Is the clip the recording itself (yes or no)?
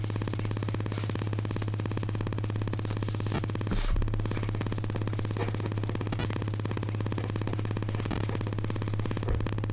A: yes